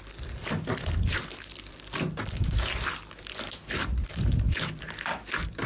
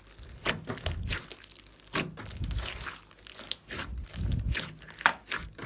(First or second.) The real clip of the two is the second